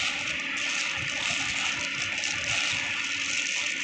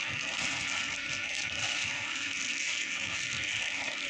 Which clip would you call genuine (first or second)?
first